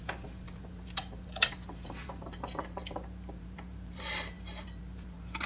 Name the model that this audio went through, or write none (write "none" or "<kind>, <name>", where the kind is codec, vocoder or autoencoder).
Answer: vocoder, BigVGAN v2